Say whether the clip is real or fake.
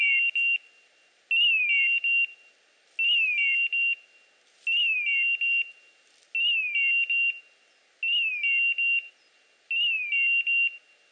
real